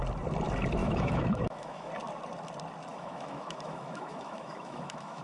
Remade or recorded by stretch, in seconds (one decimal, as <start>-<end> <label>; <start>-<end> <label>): 0.0-0.8 recorded; 0.8-1.9 remade; 1.9-2.9 recorded; 2.9-5.2 remade